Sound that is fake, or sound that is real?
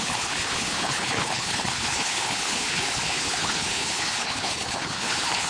fake